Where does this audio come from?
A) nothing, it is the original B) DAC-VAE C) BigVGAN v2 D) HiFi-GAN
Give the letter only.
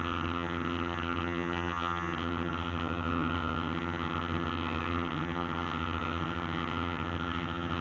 D